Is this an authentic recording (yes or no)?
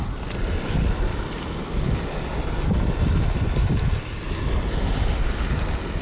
yes